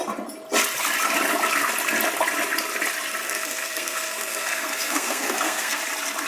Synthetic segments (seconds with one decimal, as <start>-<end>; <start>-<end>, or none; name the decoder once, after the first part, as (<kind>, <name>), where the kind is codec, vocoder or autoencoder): 3.2-5.8 (codec, SNAC)